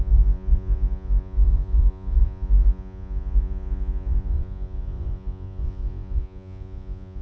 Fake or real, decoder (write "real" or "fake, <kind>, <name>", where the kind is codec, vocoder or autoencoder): fake, vocoder, Vocos